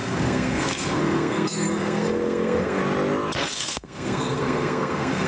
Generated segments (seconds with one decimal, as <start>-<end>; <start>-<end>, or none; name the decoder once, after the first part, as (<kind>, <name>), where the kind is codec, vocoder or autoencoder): 0.0-2.8 (codec, SNAC); 3.4-5.3